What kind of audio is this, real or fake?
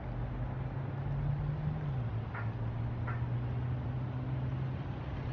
real